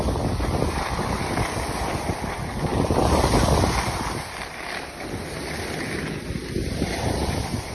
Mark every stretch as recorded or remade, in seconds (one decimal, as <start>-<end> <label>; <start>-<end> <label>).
0.0-7.7 recorded